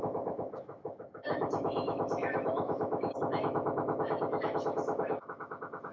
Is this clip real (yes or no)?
no